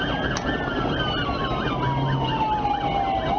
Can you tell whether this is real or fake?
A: real